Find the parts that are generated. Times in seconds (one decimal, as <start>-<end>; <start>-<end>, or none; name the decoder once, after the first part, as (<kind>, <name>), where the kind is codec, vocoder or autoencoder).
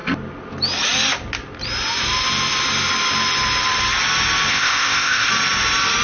4.5-5.3 (codec, ZipCodec)